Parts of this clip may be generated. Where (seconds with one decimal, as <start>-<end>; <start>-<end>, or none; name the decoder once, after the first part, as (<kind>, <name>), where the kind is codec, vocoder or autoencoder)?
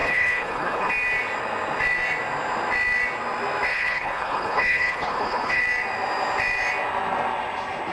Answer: 0.0-0.9 (codec, HILCodec); 3.7-5.6